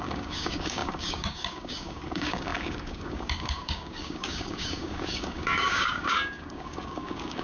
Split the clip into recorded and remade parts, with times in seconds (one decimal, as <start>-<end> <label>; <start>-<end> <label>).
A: 0.0-7.4 remade